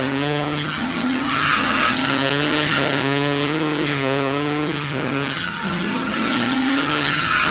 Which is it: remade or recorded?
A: remade